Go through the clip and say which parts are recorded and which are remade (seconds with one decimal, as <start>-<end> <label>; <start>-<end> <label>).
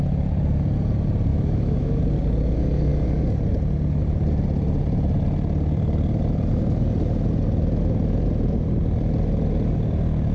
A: 0.0-1.3 recorded; 1.3-2.0 remade; 2.0-10.3 recorded